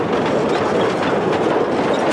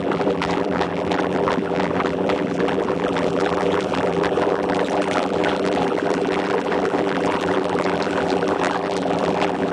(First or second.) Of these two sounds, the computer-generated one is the second